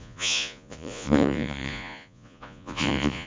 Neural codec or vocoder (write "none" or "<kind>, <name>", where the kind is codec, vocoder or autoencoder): vocoder, Vocos